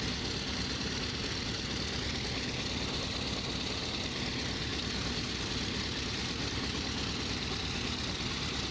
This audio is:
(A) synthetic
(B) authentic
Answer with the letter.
B